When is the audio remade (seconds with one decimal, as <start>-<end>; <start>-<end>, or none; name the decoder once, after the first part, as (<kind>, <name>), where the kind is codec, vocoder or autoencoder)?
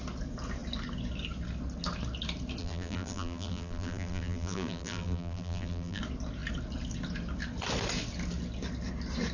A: 2.6-6.0 (vocoder, BigVGAN v2)